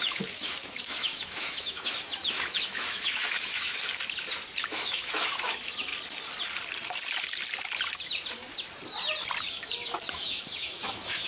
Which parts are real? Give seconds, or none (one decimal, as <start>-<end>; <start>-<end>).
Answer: 3.9-4.6; 5.9-10.1

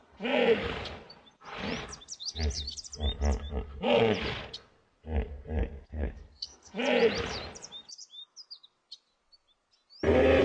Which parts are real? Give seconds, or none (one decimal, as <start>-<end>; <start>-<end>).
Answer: 0.0-5.6; 6.7-10.4